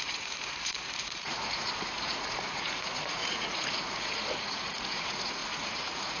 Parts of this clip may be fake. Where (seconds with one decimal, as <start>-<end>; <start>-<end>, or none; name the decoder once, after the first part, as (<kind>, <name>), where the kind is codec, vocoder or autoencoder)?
0.0-6.2 (vocoder, Vocos)